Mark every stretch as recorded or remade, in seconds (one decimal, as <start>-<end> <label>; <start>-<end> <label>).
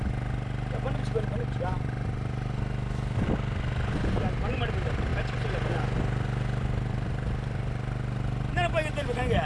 0.0-9.5 recorded